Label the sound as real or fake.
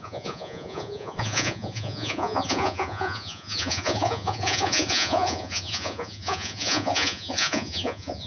fake